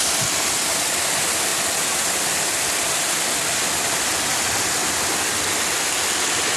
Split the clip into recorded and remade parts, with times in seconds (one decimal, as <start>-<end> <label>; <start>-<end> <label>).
0.0-6.6 recorded